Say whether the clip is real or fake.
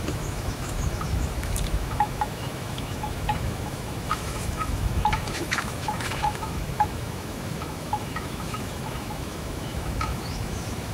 fake